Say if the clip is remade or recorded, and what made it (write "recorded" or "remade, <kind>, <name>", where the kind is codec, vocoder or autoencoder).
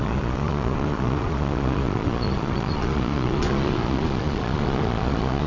remade, vocoder, Vocos